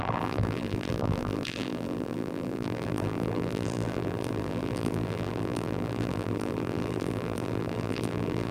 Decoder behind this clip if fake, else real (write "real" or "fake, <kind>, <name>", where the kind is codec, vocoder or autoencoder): fake, vocoder, BigVGAN v2